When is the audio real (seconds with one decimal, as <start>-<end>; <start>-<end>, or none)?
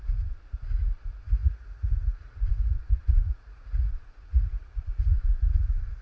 none